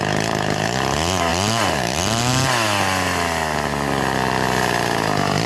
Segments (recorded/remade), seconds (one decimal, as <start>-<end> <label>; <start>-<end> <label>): 0.0-5.5 recorded